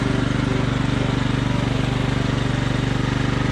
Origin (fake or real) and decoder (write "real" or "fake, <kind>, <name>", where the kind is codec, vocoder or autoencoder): real